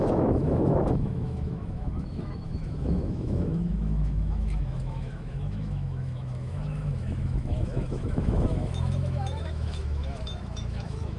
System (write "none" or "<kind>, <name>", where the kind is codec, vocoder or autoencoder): autoencoder, DAC-VAE